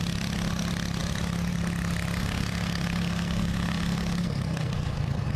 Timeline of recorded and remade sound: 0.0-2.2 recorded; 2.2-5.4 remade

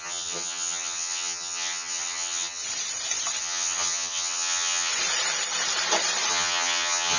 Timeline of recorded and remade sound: 0.0-2.6 remade; 2.6-3.4 recorded; 3.4-4.9 remade; 4.9-6.3 recorded; 6.3-7.2 remade

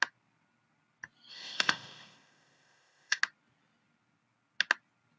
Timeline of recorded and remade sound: 0.0-1.3 recorded; 1.3-3.2 remade; 3.2-5.2 recorded

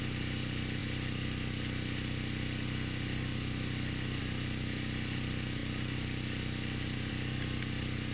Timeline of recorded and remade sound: 0.0-8.1 recorded

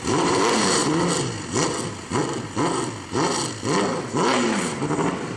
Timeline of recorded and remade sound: 0.0-0.8 remade; 0.8-4.0 recorded; 4.0-4.8 remade; 4.8-5.4 recorded

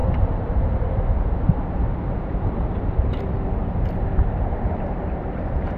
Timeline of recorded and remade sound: 0.0-3.2 remade; 3.2-3.6 recorded; 3.6-5.0 remade; 5.0-5.8 recorded

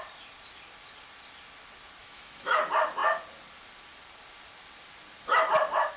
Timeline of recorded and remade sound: 0.0-2.0 recorded; 2.0-2.6 remade; 2.6-6.0 recorded